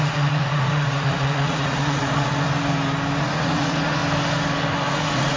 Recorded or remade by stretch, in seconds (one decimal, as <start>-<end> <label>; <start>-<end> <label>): 0.0-2.3 remade; 2.3-3.2 recorded; 3.2-4.0 remade; 4.0-4.9 recorded; 4.9-5.4 remade